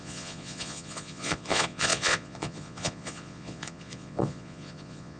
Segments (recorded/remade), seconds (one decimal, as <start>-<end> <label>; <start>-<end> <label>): 0.0-5.2 remade